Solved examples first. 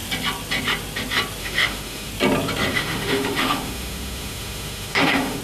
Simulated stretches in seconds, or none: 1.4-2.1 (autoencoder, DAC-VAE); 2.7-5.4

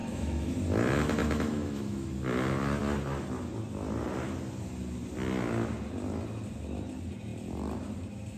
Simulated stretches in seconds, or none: 0.0-0.5 (autoencoder, DAC-VAE); 1.2-2.1

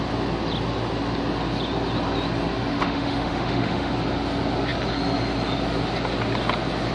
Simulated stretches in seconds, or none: 2.7-3.9 (autoencoder, DAC-VAE)

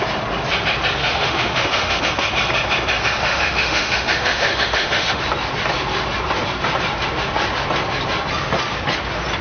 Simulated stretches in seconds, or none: 1.0-2.0 (autoencoder, DAC-VAE); 3.2-5.2

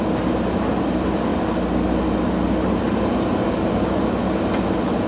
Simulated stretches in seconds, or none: none